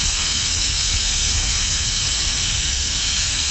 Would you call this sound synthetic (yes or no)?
yes